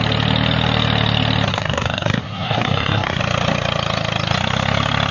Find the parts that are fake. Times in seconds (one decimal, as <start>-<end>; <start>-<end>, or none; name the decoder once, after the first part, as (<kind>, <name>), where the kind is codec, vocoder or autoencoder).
1.5-3.2 (codec, SNAC)